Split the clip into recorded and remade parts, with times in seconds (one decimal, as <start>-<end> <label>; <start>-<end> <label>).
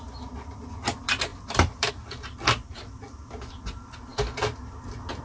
0.0-1.3 recorded; 1.3-1.9 remade; 1.9-2.7 recorded; 2.7-3.3 remade; 3.3-4.1 recorded; 4.1-5.2 remade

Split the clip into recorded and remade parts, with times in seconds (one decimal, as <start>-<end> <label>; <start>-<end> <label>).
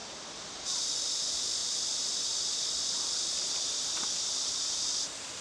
0.0-0.8 remade; 0.8-1.6 recorded; 1.6-4.8 remade; 4.8-5.4 recorded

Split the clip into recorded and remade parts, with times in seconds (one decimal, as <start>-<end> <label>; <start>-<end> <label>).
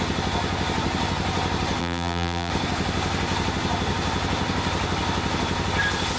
0.0-1.8 recorded; 1.8-2.5 remade; 2.5-6.2 recorded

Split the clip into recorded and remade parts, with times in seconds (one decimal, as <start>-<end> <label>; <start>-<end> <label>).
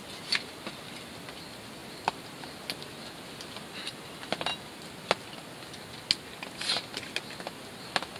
0.0-1.8 recorded; 1.8-2.4 remade; 2.4-8.2 recorded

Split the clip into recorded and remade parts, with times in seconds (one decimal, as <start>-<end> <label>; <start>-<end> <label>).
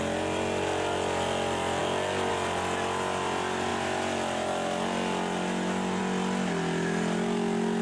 0.0-7.8 recorded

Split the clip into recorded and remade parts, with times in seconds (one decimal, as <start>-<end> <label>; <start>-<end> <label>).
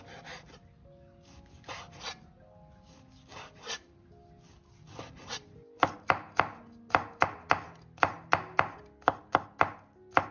0.0-3.3 recorded; 3.3-4.0 remade; 4.0-10.3 recorded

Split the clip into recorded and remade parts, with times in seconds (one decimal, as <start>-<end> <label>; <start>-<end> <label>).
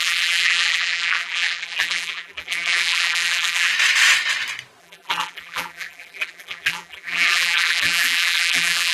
0.0-3.7 remade; 3.7-4.8 recorded; 4.8-8.9 remade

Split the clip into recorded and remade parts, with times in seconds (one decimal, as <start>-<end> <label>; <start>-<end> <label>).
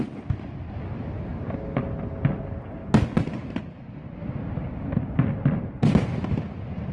0.0-1.3 recorded; 1.3-2.1 remade; 2.1-6.9 recorded